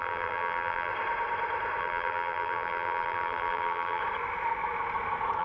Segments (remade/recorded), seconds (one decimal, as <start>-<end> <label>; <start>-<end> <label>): 0.0-0.9 remade; 0.9-1.8 recorded; 1.8-4.0 remade; 4.0-5.4 recorded